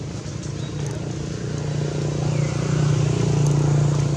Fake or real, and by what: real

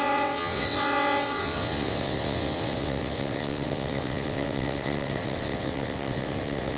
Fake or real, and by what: fake, vocoder, WaveNeXt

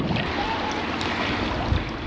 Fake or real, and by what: real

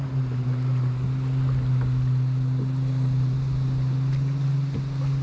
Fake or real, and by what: real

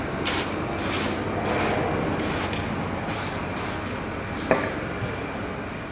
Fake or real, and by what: real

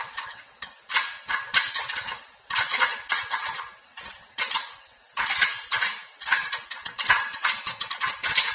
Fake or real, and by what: fake, vocoder, WaveNeXt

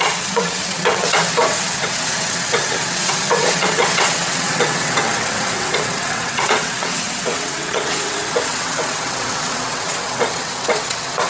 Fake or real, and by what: fake, vocoder, WaveNeXt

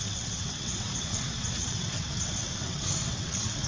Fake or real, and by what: fake, vocoder, WaveNeXt